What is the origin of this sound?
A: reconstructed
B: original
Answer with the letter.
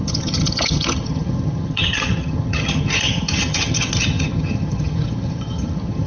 A